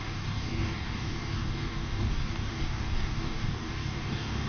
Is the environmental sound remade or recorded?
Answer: remade